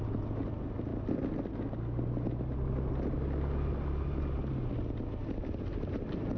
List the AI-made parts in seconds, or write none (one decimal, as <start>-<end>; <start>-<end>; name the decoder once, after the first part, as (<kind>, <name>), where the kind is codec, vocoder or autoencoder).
none